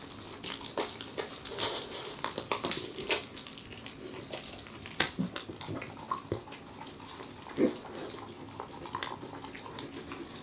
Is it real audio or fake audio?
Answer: real